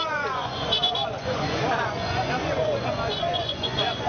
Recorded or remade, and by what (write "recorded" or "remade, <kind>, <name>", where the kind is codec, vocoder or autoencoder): remade, vocoder, Vocos